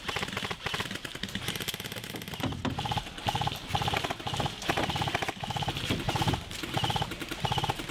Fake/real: real